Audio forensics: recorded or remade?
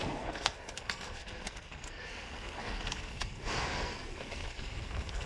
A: remade